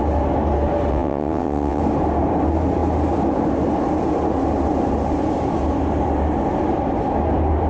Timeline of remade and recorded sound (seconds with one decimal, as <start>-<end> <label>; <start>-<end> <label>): 0.0-0.9 recorded; 0.9-1.8 remade; 1.8-7.7 recorded